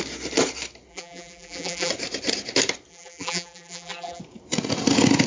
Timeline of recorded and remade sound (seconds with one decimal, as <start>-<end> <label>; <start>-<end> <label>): 0.0-0.9 recorded; 0.9-1.9 remade; 1.9-2.9 recorded; 2.9-4.2 remade; 4.2-5.3 recorded